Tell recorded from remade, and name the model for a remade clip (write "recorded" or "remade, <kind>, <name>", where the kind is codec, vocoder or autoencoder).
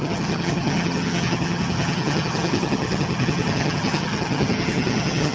remade, vocoder, HiFi-GAN